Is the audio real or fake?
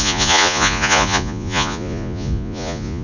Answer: fake